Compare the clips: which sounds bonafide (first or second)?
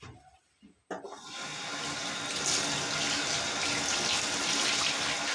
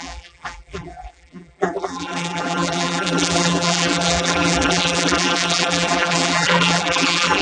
first